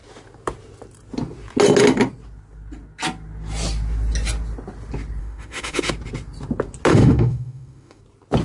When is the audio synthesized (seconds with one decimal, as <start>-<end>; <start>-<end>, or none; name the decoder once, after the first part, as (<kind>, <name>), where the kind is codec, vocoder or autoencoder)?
5.2-5.9 (autoencoder, DAC-VAE); 6.9-8.0

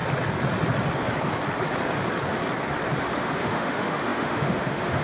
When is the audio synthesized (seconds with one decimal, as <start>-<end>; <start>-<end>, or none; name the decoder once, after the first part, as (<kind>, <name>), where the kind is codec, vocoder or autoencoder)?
3.0-5.0 (autoencoder, DAC-VAE)

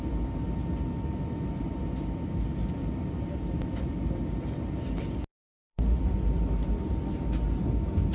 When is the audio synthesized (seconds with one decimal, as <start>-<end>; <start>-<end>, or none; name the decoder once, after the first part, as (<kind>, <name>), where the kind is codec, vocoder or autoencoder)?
5.3-6.0 (autoencoder, DAC-VAE)